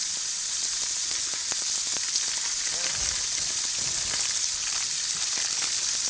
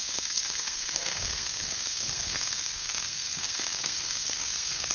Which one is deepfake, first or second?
second